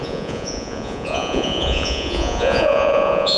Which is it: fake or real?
fake